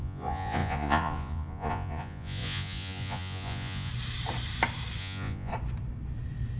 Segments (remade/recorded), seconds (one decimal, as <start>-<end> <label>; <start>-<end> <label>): 0.0-3.9 remade; 3.9-5.0 recorded; 5.0-5.5 remade; 5.5-6.6 recorded